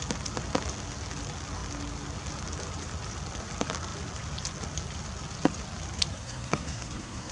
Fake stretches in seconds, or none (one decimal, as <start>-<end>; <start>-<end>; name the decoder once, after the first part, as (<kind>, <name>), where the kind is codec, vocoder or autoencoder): 6.1-7.3 (codec, SNAC)